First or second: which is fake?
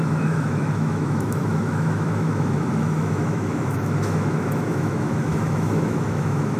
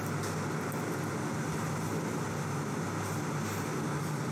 first